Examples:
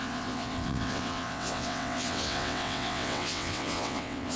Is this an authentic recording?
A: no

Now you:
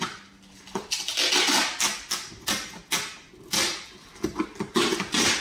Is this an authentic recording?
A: yes